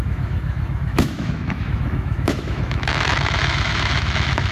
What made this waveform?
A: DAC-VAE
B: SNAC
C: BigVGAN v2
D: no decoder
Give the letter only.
A